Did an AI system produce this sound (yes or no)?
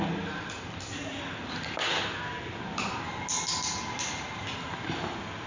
no